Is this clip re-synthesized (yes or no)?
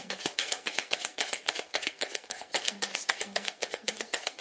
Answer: yes